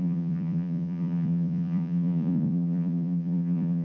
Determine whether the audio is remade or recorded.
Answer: remade